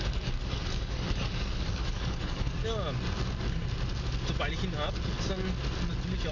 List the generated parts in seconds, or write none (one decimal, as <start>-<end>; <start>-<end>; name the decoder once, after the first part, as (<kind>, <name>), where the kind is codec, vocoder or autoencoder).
0.0-2.6 (codec, DAC)

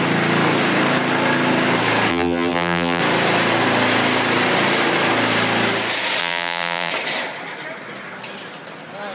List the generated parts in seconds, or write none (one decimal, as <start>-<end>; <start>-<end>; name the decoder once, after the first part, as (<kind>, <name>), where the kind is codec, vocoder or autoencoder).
2.1-3.0 (vocoder, BigVGAN v2); 6.2-6.9

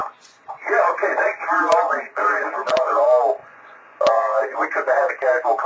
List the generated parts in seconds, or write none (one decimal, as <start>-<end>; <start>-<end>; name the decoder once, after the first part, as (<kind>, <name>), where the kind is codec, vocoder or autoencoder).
0.0-3.0 (vocoder, Vocos); 3.4-5.1

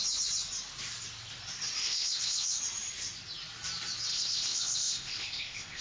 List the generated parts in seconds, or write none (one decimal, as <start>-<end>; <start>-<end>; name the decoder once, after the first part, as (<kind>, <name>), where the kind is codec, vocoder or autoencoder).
1.8-2.6 (codec, ZipCodec); 4.1-5.8

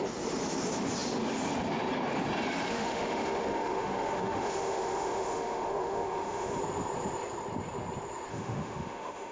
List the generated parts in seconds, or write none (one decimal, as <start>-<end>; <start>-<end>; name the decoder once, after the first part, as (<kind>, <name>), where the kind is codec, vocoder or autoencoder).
2.7-6.6 (autoencoder, DAC-VAE); 8.3-9.3